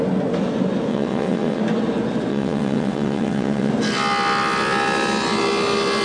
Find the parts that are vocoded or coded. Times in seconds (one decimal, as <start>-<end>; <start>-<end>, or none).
0.9-1.6; 2.3-3.7